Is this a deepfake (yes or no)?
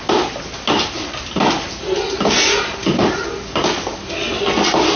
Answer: no